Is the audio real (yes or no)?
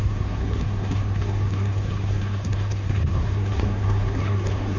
no